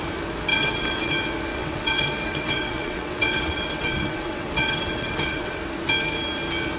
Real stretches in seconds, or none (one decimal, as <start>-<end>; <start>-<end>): 0.0-0.5; 1.1-1.5; 5.6-6.8